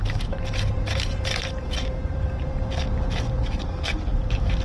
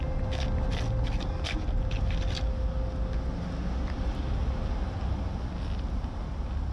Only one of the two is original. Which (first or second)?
second